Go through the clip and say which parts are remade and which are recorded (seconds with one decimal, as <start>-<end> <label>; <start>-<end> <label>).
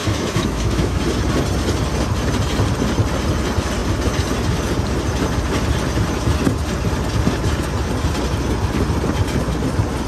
0.0-1.0 remade; 1.0-10.1 recorded